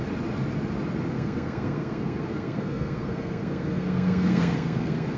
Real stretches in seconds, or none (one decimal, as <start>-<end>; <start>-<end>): 0.0-1.1